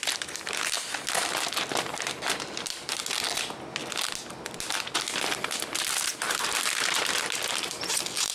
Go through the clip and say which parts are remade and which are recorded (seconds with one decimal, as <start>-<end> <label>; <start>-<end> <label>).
0.0-8.3 recorded

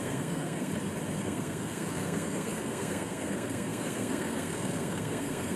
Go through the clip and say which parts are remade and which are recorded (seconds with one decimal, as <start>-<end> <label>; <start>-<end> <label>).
0.0-0.7 remade; 0.7-1.2 recorded; 1.2-5.6 remade

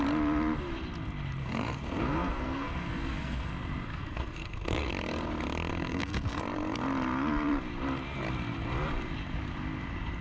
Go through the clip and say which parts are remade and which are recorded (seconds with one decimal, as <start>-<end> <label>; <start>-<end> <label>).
0.0-1.4 recorded; 1.4-3.5 remade; 3.5-3.9 recorded; 3.9-4.9 remade; 4.9-5.7 recorded; 5.7-6.4 remade; 6.4-10.2 recorded

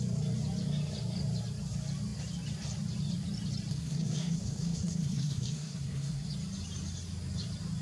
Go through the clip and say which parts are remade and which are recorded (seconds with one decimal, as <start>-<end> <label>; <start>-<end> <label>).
0.0-3.7 recorded; 3.7-6.3 remade; 6.3-7.8 recorded